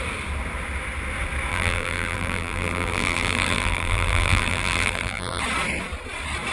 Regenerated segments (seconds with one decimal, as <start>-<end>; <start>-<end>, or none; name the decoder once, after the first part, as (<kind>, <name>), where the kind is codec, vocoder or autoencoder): 1.5-5.4 (vocoder, BigVGAN v2)